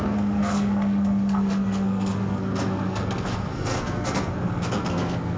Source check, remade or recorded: remade